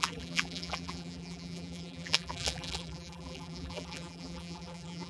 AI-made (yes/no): yes